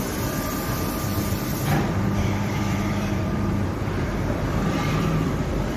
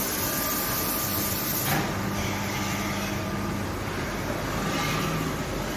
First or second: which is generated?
first